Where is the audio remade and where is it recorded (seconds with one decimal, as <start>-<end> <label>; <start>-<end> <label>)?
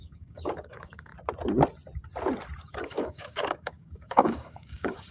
0.0-1.1 remade; 1.1-2.6 recorded; 2.6-5.1 remade